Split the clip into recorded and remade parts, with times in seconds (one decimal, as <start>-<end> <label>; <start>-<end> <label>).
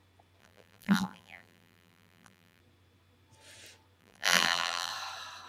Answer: 0.0-0.4 recorded; 0.4-2.6 remade; 2.6-4.0 recorded; 4.0-4.9 remade; 4.9-5.5 recorded